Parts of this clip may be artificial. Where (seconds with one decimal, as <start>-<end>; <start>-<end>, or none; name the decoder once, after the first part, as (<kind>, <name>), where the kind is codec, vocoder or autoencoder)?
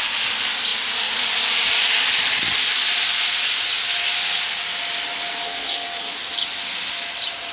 5.3-6.1 (codec, SNAC)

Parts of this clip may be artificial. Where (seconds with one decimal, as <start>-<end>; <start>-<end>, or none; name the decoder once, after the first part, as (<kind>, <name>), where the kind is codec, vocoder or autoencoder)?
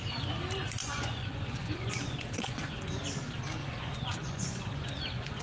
0.8-3.0 (vocoder, Vocos); 3.6-5.4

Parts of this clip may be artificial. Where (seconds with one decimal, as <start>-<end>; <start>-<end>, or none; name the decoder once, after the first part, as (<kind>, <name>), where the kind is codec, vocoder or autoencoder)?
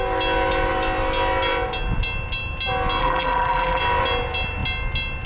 3.0-3.8 (vocoder, BigVGAN v2)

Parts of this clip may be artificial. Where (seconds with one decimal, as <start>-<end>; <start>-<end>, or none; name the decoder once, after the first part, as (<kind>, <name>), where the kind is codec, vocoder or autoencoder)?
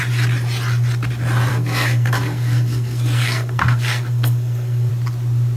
1.5-4.9 (codec, SNAC)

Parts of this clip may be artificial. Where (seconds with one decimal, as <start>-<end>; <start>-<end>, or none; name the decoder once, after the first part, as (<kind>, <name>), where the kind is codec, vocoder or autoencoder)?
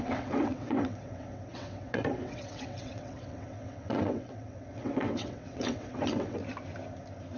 0.0-6.4 (vocoder, WaveNeXt)